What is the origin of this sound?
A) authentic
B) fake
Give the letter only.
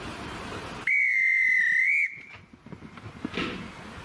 A